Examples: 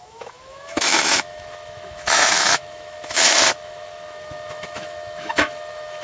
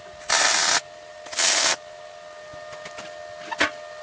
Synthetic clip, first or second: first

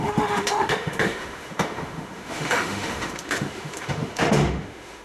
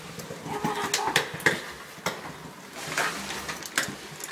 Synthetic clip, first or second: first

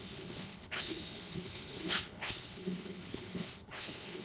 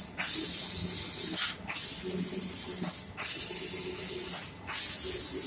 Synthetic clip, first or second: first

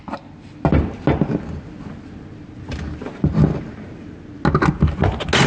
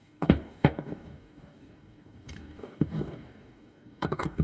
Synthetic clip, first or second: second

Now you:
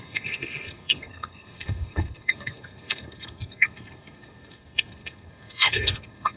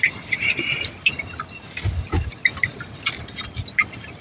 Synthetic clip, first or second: first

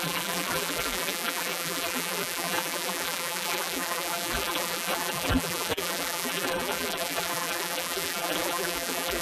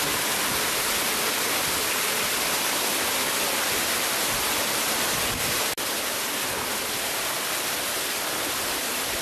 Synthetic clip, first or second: first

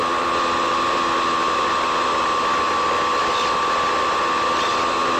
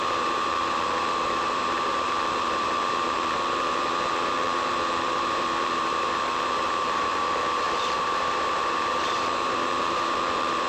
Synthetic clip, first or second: second